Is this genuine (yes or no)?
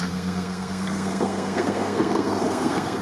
no